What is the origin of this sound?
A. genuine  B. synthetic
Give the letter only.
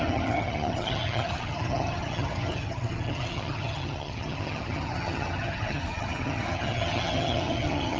B